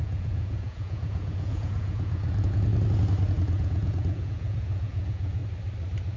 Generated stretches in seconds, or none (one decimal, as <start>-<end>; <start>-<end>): 0.0-2.7; 3.3-5.4